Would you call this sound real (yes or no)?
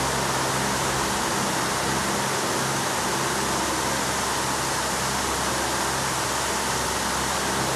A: yes